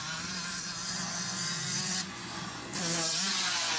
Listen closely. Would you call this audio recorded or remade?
remade